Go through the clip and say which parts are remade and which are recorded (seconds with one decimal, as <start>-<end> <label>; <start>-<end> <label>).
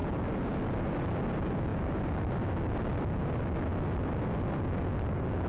0.0-5.5 recorded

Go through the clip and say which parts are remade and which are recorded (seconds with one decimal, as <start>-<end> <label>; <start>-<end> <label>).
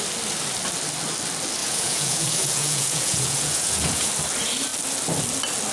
0.0-1.6 recorded; 1.6-4.1 remade; 4.1-5.7 recorded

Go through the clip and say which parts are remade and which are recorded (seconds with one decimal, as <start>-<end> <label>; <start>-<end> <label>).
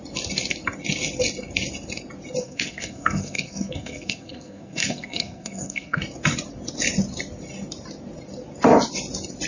0.0-2.4 recorded; 2.4-6.0 remade; 6.0-9.5 recorded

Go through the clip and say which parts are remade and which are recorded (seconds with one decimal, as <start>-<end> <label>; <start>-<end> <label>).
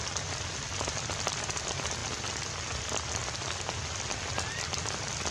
0.0-5.3 recorded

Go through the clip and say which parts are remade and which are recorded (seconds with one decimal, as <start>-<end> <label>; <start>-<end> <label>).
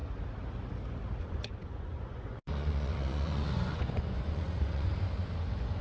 0.0-1.2 recorded; 1.2-4.9 remade; 4.9-5.8 recorded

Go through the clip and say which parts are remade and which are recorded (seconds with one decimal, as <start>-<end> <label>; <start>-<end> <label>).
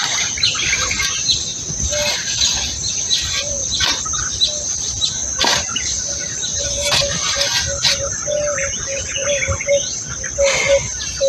0.0-1.5 recorded; 1.5-3.9 remade; 3.9-8.9 recorded; 8.9-9.7 remade; 9.7-11.3 recorded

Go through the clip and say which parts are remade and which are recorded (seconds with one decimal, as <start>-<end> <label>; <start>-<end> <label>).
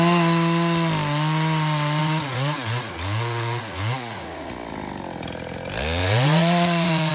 0.0-2.0 recorded; 2.0-4.5 remade; 4.5-6.0 recorded; 6.0-7.1 remade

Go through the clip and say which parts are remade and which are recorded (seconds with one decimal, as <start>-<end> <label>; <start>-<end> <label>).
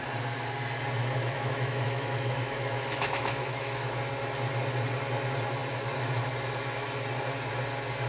0.0-1.2 recorded; 1.2-4.0 remade; 4.0-8.1 recorded